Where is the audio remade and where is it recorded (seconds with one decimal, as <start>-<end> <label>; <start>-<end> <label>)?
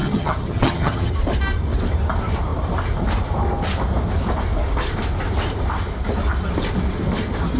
0.0-1.1 remade; 1.1-7.6 recorded